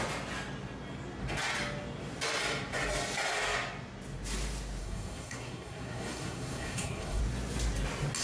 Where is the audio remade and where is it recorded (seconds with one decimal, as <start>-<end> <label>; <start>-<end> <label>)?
0.0-4.8 recorded; 4.8-7.2 remade; 7.2-8.2 recorded